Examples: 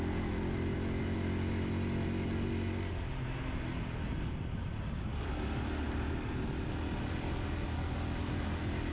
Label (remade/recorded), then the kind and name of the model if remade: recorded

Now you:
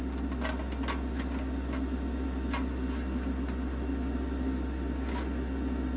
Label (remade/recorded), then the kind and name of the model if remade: recorded